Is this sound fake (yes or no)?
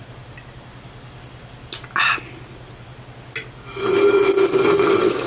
no